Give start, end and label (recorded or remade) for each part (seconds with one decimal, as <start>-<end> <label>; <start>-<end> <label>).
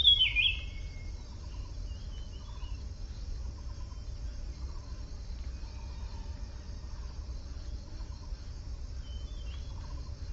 0.0-0.9 remade; 0.9-10.3 recorded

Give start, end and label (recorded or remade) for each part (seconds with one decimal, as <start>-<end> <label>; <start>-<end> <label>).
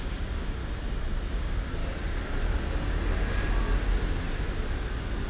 0.0-0.6 remade; 0.6-1.3 recorded; 1.3-1.8 remade; 1.8-5.3 recorded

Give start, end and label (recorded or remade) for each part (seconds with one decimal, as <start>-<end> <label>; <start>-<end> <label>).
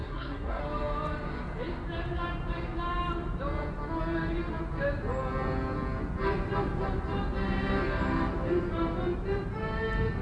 0.0-0.6 remade; 0.6-10.2 recorded